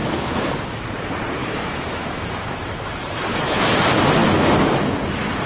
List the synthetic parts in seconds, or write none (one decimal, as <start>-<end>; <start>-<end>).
0.0-0.5; 1.4-3.7; 4.2-5.0